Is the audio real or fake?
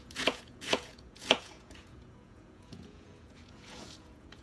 fake